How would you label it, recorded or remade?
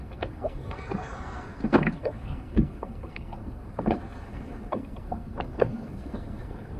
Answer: remade